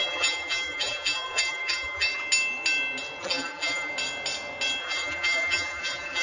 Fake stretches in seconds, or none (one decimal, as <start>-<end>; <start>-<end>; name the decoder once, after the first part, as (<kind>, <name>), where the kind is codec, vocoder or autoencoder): 0.0-2.1 (vocoder, BigVGAN v2); 3.2-3.9; 4.8-6.2